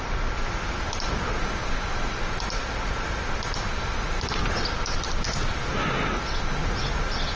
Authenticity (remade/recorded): remade